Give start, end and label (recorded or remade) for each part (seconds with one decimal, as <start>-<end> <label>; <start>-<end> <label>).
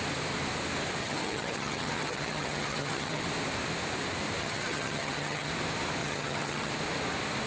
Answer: 0.0-1.0 recorded; 1.0-3.2 remade; 3.2-4.4 recorded; 4.4-5.5 remade; 5.5-6.0 recorded; 6.0-6.7 remade; 6.7-7.5 recorded